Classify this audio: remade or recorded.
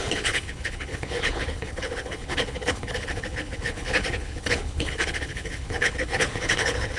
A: remade